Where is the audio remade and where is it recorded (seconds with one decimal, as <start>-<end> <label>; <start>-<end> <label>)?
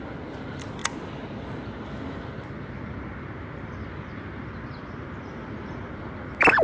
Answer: 0.0-6.6 recorded